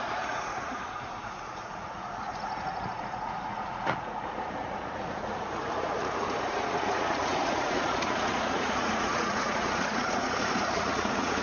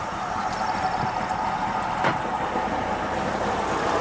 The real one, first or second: second